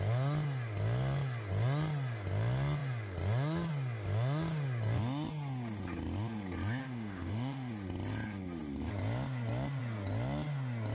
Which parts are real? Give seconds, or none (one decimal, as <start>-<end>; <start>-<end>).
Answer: 0.0-6.8; 7.7-10.9